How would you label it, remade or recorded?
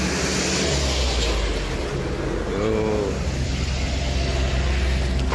recorded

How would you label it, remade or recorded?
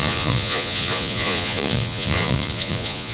remade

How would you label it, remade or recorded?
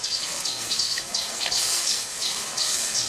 remade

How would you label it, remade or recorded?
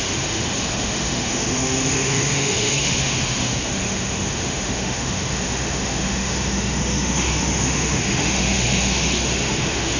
remade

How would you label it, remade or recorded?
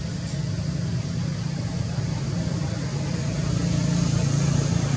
recorded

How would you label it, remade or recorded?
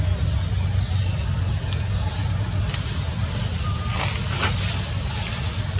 recorded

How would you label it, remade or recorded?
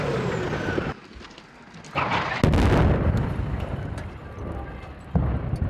recorded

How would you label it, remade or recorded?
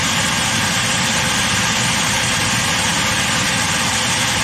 recorded